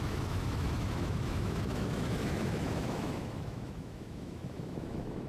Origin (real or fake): fake